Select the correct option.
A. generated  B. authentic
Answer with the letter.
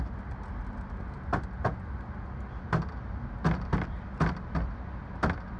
B